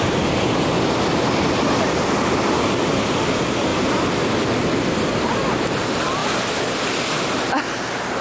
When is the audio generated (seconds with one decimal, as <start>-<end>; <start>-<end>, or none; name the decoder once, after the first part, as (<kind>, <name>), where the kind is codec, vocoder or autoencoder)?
3.7-4.3 (vocoder, BigVGAN v2)